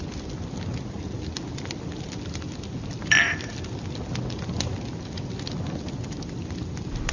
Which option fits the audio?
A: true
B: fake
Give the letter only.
A